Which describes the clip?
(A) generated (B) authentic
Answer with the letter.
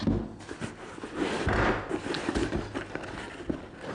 B